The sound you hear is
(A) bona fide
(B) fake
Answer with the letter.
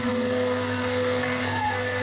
B